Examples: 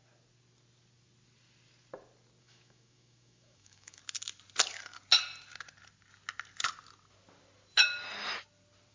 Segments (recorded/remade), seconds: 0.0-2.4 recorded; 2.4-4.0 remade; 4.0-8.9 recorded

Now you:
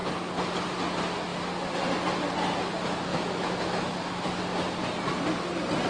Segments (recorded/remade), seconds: 0.0-3.1 recorded; 3.1-4.4 remade; 4.4-5.9 recorded

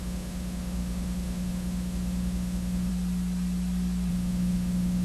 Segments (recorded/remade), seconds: 0.0-2.9 remade; 2.9-4.1 recorded; 4.1-5.0 remade